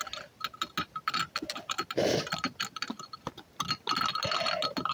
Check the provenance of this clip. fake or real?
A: real